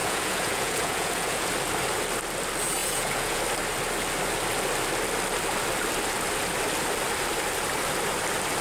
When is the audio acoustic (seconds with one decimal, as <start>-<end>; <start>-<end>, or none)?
1.5-2.8; 3.4-8.6